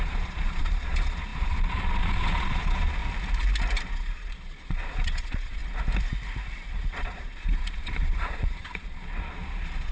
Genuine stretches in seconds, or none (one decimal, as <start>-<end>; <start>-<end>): 3.0-3.9; 5.6-6.7